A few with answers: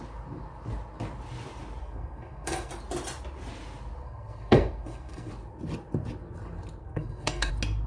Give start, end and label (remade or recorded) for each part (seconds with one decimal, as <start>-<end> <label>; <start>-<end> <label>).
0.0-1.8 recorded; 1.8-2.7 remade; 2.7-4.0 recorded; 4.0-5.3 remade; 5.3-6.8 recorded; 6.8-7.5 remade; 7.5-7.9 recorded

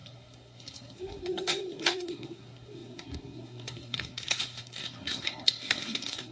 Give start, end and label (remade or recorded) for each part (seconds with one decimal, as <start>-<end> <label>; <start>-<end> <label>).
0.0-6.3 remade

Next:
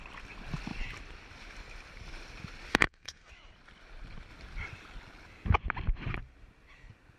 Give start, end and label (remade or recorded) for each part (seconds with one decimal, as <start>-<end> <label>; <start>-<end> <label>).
0.0-2.7 recorded; 2.7-3.3 remade; 3.3-7.2 recorded